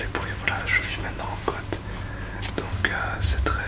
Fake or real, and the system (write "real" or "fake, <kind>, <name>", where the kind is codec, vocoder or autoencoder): real